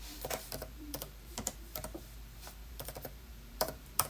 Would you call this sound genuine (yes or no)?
no